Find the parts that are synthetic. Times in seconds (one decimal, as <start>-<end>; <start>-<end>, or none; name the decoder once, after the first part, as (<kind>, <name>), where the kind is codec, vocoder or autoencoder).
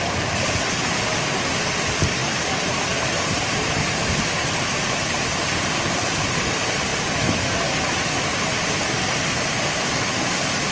none